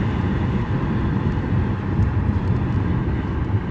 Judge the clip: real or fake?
real